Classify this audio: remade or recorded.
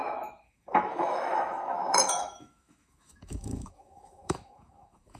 remade